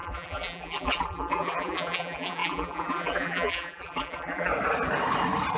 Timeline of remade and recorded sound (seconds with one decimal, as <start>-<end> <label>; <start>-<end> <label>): 0.0-4.5 remade; 4.5-5.6 recorded